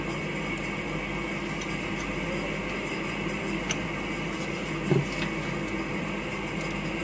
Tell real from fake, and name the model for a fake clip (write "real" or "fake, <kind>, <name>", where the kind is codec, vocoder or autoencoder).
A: real